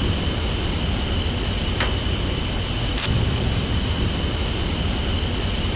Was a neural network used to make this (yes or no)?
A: no